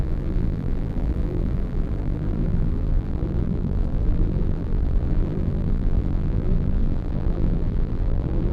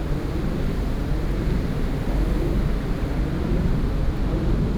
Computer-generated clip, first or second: first